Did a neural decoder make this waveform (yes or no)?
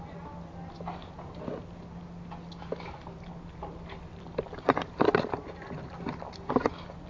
no